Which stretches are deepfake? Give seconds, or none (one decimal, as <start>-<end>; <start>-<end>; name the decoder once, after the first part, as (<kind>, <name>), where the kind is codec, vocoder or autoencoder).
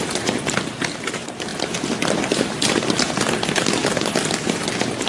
1.5-2.9 (vocoder, BigVGAN v2)